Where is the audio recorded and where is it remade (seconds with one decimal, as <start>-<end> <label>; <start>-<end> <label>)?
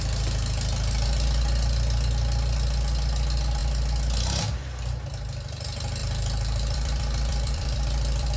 0.0-6.0 recorded; 6.0-8.4 remade